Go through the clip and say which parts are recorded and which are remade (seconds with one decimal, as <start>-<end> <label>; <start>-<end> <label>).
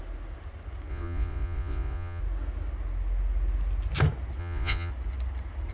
0.0-0.9 recorded; 0.9-2.2 remade; 2.2-4.4 recorded; 4.4-4.9 remade; 4.9-5.7 recorded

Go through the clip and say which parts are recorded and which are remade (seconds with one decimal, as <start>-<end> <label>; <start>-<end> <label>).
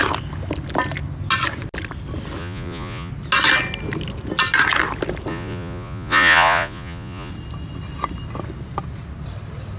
0.0-2.4 recorded; 2.4-3.1 remade; 3.1-5.3 recorded; 5.3-7.3 remade; 7.3-9.8 recorded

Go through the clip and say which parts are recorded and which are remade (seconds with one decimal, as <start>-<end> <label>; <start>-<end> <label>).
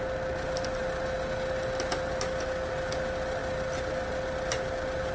0.0-5.1 recorded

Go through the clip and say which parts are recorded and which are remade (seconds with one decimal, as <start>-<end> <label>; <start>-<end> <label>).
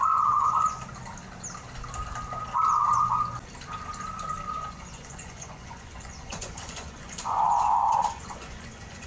0.0-0.8 remade; 0.8-4.5 recorded; 4.5-9.1 remade